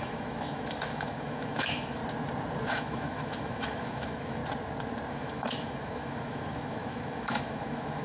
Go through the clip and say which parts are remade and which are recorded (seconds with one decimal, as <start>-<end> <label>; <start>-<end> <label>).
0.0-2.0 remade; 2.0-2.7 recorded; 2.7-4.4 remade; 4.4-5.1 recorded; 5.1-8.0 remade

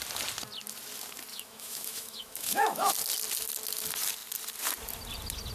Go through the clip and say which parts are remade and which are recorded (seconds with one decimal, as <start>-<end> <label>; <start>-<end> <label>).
0.0-1.3 recorded; 1.3-2.9 remade; 2.9-5.5 recorded

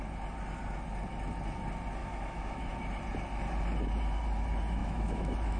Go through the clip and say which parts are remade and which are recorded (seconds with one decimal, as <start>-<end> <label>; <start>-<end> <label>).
0.0-2.0 recorded; 2.0-2.7 remade; 2.7-4.8 recorded; 4.8-5.6 remade